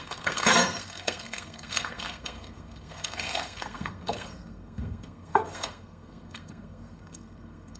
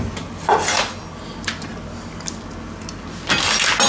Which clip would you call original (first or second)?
second